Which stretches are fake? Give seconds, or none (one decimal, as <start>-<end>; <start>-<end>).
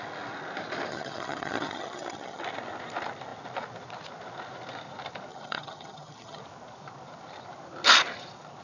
0.9-2.4; 5.3-6.4